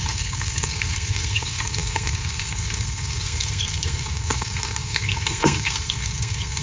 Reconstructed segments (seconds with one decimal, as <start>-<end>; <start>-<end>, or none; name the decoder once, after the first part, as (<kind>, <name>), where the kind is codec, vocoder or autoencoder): 0.0-6.6 (codec, SNAC)